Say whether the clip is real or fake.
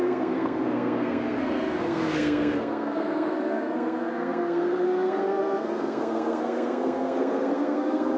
fake